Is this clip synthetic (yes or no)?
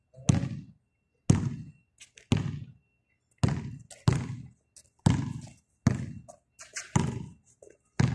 no